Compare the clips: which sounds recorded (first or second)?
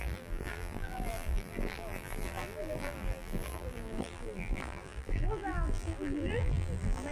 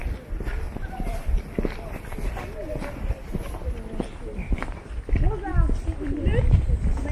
second